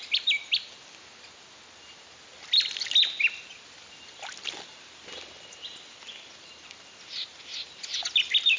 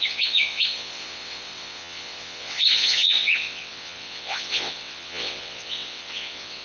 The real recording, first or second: first